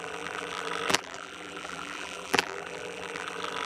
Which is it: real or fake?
fake